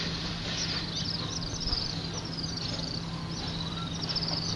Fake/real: real